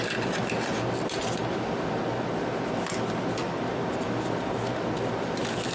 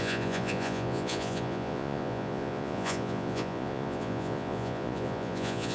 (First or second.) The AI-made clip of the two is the second